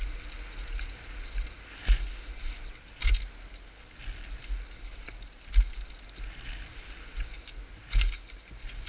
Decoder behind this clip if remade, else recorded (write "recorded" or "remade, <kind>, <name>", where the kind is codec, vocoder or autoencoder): recorded